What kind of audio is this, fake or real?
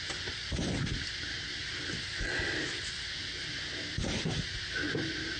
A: real